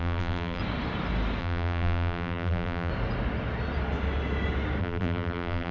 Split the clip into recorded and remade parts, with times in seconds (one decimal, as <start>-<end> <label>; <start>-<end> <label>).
0.0-0.6 remade; 0.6-1.4 recorded; 1.4-2.9 remade; 2.9-4.8 recorded; 4.8-5.7 remade